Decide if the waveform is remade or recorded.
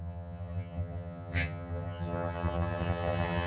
remade